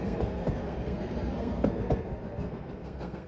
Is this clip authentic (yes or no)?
no